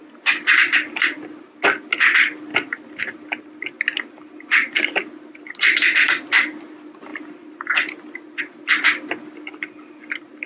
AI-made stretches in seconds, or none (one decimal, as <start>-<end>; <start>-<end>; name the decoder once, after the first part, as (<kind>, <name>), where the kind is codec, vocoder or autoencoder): none